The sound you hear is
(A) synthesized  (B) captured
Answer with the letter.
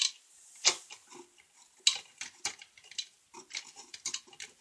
B